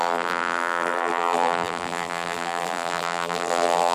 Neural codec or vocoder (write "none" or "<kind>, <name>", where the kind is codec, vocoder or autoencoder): vocoder, BigVGAN v2